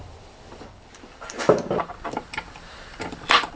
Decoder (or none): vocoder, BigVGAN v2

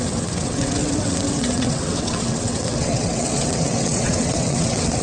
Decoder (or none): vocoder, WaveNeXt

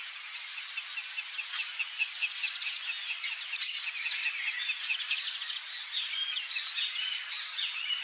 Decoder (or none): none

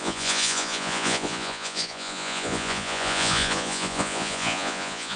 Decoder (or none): vocoder, Vocos